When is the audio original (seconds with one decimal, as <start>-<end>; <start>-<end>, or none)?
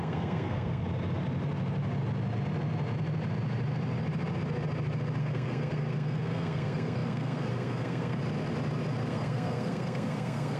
0.8-5.2; 8.2-9.1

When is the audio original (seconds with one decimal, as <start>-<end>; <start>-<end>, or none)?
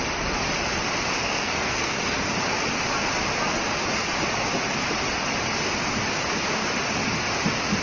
0.0-1.2; 2.3-7.8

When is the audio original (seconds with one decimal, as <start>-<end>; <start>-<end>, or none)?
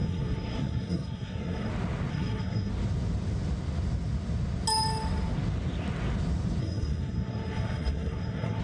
1.7-2.1; 2.7-6.6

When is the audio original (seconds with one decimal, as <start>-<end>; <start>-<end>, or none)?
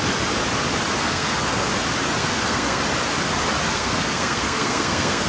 0.0-1.0; 1.7-2.2; 2.8-3.6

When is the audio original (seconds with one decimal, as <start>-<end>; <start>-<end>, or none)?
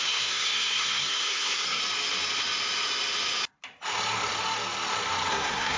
1.8-5.3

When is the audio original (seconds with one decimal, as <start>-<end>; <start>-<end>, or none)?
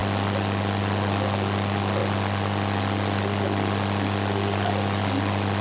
0.0-5.6